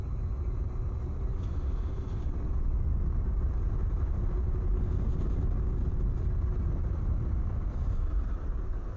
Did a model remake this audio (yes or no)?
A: no